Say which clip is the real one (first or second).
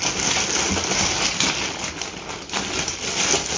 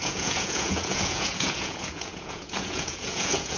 first